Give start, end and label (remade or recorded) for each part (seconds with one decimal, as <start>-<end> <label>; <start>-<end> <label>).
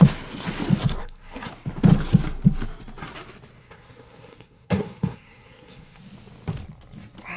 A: 0.0-1.0 recorded; 1.0-1.5 remade; 1.5-3.6 recorded; 3.6-6.0 remade; 6.0-7.4 recorded